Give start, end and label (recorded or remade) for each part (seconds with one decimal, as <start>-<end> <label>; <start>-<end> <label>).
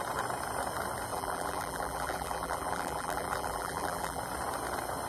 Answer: 0.0-1.1 recorded; 1.1-4.2 remade; 4.2-5.1 recorded